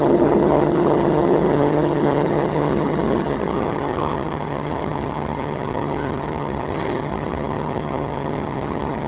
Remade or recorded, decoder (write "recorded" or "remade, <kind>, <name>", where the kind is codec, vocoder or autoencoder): remade, vocoder, HiFi-GAN